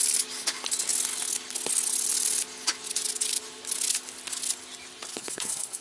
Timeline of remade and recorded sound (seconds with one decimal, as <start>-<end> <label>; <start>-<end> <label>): 0.0-5.1 recorded; 5.1-5.8 remade